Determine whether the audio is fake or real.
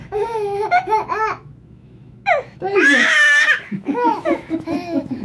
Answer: fake